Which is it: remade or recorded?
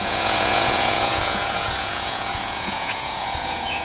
remade